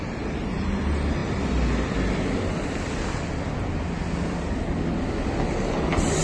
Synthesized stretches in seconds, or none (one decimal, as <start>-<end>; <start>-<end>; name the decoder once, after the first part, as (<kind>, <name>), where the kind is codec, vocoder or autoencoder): none